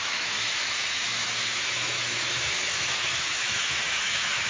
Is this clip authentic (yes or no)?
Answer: no